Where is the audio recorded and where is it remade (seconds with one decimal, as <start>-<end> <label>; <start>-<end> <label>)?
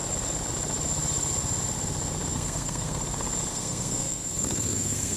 0.0-2.3 recorded; 2.3-3.0 remade; 3.0-3.5 recorded; 3.5-5.2 remade